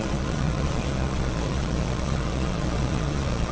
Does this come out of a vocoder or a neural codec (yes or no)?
yes